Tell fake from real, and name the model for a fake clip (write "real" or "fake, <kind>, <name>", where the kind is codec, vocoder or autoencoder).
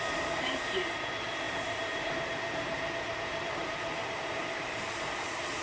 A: fake, vocoder, BigVGAN v2